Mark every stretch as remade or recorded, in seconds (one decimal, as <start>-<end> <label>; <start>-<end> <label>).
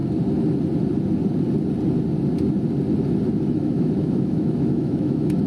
0.0-3.3 recorded; 3.3-5.5 remade